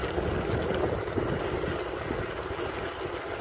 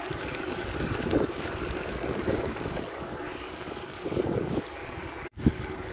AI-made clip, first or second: second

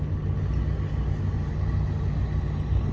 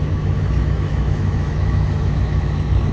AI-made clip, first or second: second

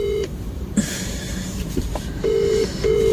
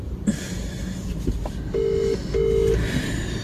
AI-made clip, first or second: first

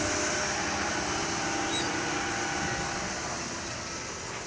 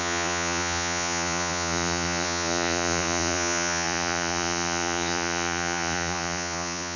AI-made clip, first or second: second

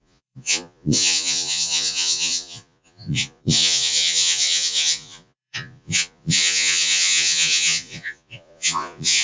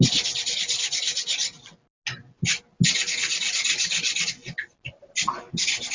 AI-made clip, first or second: first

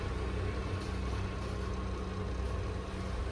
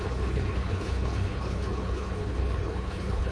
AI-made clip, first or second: second